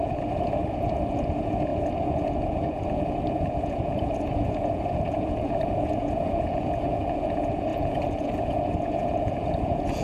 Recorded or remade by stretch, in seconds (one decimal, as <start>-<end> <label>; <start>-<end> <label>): 0.0-10.0 remade